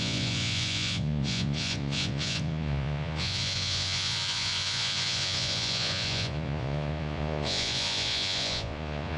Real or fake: fake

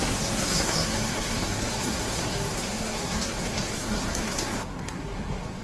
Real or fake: fake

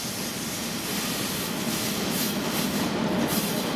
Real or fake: real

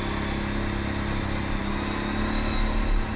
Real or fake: real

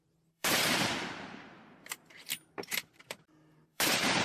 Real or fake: fake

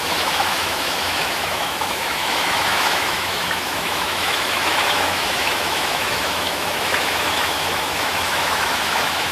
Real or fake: fake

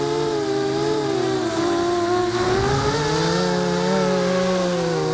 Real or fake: real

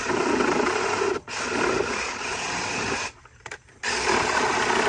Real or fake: real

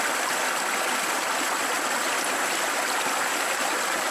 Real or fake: real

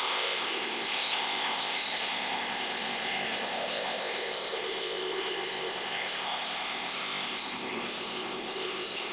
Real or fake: fake